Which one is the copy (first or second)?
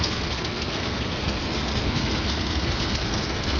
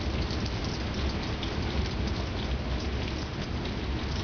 first